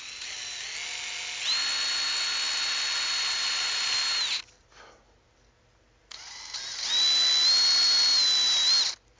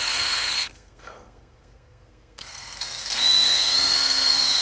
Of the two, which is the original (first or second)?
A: first